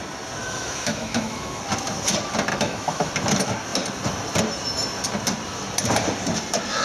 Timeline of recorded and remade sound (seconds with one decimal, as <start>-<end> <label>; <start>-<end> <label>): 0.0-0.4 recorded; 0.4-1.6 remade; 1.6-2.5 recorded; 2.5-3.1 remade; 3.1-6.8 recorded